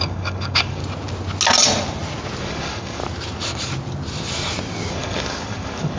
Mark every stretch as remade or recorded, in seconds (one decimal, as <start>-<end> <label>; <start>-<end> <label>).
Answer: 0.0-0.8 remade; 0.8-2.4 recorded; 2.4-3.0 remade; 3.0-4.9 recorded; 4.9-6.0 remade